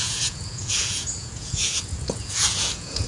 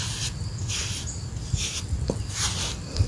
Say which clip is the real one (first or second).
second